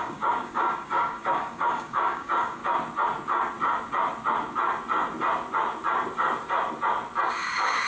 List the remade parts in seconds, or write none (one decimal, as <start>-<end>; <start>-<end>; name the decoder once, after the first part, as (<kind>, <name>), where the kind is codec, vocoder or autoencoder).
0.0-2.6 (codec, DAC); 7.3-7.9